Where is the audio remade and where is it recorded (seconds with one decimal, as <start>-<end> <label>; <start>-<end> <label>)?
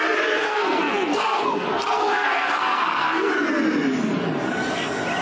0.0-0.4 recorded; 0.4-3.3 remade; 3.3-5.2 recorded